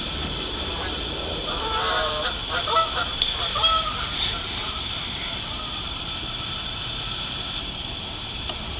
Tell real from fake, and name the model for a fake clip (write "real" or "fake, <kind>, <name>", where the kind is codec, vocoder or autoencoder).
fake, vocoder, BigVGAN v2